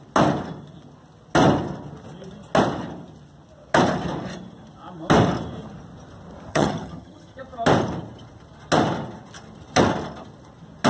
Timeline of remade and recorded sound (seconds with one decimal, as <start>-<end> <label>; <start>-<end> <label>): 0.0-6.5 recorded; 6.5-7.4 remade; 7.4-10.9 recorded